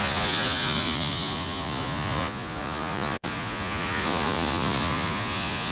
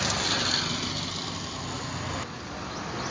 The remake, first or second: first